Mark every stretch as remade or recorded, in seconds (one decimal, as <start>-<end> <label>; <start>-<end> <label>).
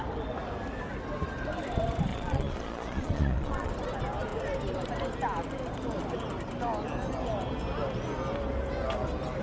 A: 0.0-2.1 recorded; 2.1-3.7 remade; 3.7-9.4 recorded